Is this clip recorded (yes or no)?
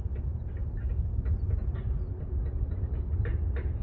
yes